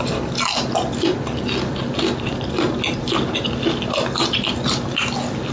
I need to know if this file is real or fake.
real